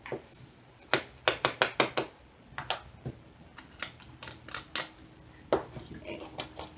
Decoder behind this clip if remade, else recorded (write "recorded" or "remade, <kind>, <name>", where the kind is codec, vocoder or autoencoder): recorded